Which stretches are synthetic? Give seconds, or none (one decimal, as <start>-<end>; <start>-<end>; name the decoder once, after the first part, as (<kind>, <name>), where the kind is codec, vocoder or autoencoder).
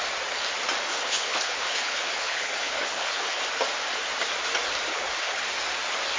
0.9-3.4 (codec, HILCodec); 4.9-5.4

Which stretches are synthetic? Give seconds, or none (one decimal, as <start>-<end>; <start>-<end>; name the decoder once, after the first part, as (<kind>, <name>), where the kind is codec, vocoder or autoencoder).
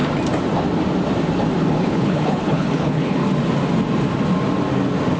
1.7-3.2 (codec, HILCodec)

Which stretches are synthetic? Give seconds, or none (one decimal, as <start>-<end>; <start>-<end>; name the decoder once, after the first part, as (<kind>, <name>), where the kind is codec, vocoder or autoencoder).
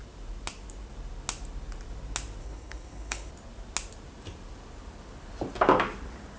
2.4-3.3 (codec, HILCodec)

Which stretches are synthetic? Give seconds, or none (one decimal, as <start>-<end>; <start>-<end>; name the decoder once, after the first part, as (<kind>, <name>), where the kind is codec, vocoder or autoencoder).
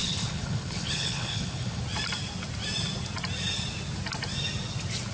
0.0-1.8 (codec, HILCodec)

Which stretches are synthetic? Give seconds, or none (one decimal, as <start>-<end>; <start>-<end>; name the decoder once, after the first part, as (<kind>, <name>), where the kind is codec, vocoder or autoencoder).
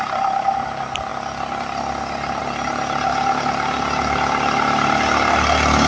none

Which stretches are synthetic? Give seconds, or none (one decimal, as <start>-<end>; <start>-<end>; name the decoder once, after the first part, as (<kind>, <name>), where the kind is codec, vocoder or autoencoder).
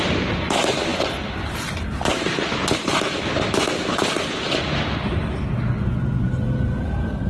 none